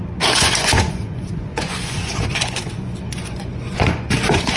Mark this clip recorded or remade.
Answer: remade